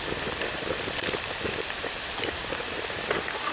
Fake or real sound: real